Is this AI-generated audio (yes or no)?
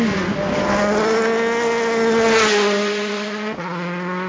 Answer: no